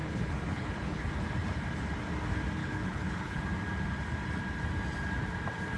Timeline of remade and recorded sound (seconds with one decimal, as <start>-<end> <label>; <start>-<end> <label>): 0.0-1.0 remade; 1.0-2.6 recorded; 2.6-3.4 remade; 3.4-5.8 recorded

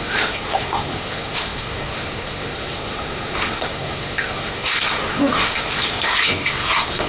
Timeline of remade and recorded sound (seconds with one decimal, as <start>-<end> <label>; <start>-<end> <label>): 0.0-7.1 remade

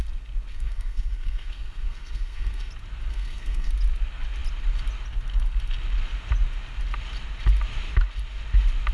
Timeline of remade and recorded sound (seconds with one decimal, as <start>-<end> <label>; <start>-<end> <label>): 0.0-0.5 recorded; 0.5-2.7 remade; 2.7-3.1 recorded; 3.1-3.7 remade; 3.7-8.9 recorded

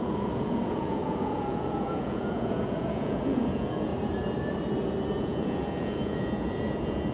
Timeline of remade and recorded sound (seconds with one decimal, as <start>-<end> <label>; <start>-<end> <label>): 0.0-3.9 remade; 3.9-5.2 recorded; 5.2-7.1 remade

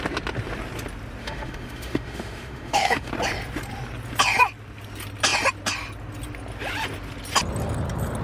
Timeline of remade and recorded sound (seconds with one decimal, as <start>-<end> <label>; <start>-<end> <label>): 0.0-1.2 recorded; 1.2-3.1 remade; 3.1-8.2 recorded